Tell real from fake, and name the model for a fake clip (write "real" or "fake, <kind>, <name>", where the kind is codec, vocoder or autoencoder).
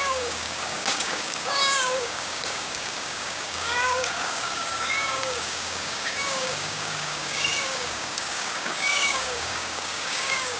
fake, codec, DAC